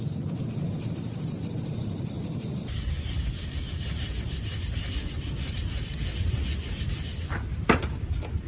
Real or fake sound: real